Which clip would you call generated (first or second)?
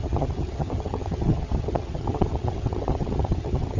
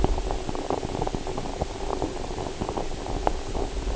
first